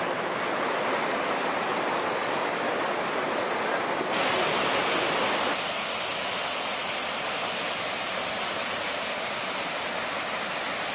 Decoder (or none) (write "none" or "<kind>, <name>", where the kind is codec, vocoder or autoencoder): none